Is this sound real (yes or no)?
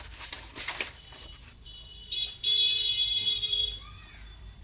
no